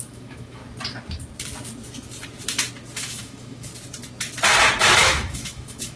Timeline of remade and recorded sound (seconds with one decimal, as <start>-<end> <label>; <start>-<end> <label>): 0.0-0.6 remade; 0.6-3.0 recorded; 3.0-3.7 remade; 3.7-4.8 recorded; 4.8-6.0 remade